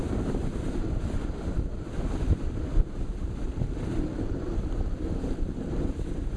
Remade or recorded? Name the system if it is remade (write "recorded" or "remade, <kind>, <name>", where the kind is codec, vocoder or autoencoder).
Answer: recorded